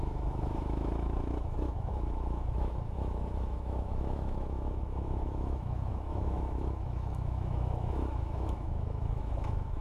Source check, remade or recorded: remade